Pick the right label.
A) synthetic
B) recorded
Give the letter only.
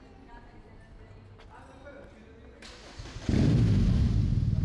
B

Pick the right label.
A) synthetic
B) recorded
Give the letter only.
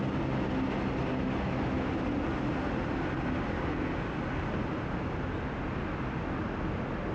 B